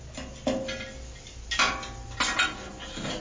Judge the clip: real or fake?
real